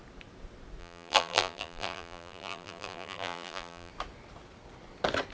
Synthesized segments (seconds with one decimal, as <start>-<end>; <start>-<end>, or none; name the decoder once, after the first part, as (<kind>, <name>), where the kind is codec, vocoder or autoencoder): 0.8-3.9 (vocoder, BigVGAN v2)